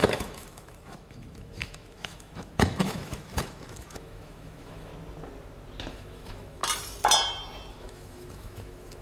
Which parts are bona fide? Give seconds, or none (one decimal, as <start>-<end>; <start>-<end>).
4.9-5.9; 6.6-7.7